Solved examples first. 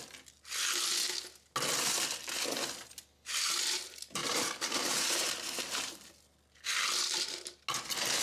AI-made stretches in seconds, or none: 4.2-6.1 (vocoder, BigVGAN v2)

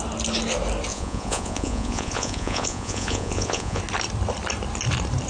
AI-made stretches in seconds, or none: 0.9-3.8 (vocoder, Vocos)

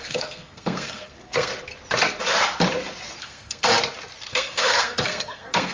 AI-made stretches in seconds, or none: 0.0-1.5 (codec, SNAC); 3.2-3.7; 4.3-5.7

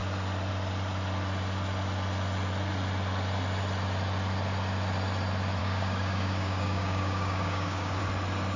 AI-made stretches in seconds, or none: 5.6-8.0 (codec, DAC)